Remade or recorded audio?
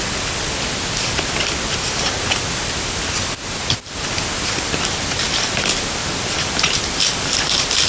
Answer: recorded